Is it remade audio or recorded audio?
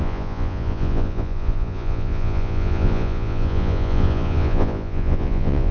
remade